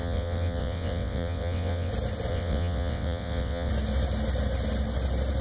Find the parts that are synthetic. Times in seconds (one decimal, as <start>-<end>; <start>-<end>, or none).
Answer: 0.0-1.9; 2.3-3.7